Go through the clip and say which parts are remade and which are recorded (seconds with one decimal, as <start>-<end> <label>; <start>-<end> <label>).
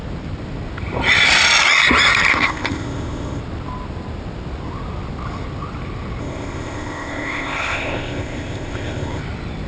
0.0-2.3 recorded; 2.3-3.4 remade; 3.4-6.2 recorded; 6.2-9.2 remade; 9.2-9.7 recorded